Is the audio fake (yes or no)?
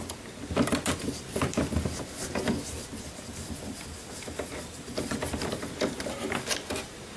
yes